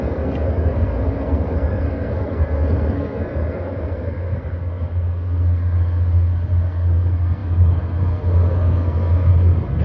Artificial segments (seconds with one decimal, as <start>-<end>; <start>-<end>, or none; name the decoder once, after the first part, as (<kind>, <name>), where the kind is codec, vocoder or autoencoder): 0.0-9.8 (codec, SNAC)